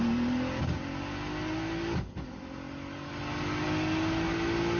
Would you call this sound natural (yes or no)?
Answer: yes